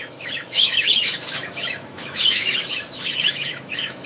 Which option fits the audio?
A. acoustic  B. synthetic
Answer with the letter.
B